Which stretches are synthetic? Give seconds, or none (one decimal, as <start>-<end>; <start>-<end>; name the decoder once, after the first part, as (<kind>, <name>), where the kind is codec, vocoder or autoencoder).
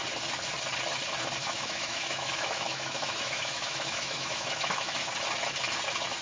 1.4-5.1 (autoencoder, DAC-VAE)